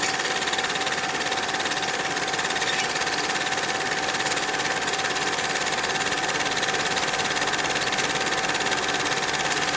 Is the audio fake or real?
real